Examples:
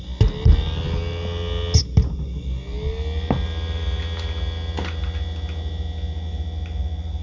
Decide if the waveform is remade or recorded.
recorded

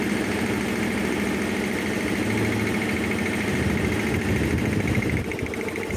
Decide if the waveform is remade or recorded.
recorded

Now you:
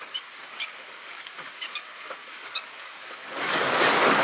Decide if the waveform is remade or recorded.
remade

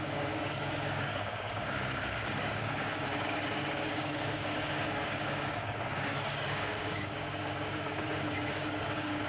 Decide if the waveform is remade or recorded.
remade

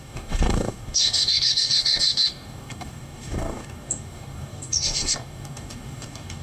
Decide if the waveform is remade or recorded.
remade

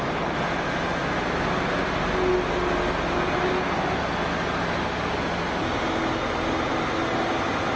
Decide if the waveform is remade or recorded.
recorded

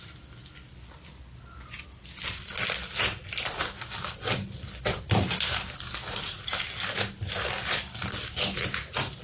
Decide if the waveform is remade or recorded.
recorded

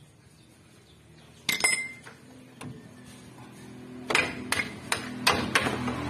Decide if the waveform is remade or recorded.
recorded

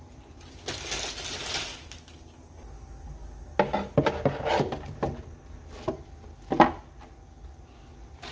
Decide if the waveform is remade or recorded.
recorded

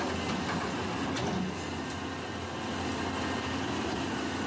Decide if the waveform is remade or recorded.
recorded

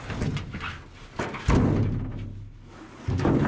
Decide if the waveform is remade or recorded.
recorded